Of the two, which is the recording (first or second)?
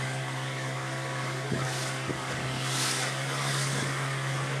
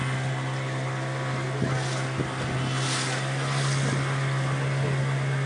second